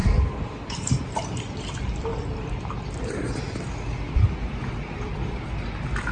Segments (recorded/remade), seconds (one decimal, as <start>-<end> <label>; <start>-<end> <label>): 0.0-1.0 remade; 1.0-6.1 recorded